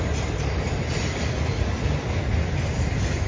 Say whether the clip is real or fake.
real